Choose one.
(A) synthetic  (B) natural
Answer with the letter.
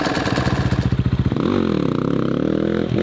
B